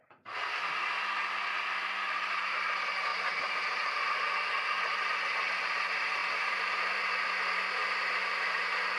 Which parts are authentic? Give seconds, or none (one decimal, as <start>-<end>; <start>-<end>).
0.0-3.1; 4.0-6.2; 7.0-7.8; 8.6-9.0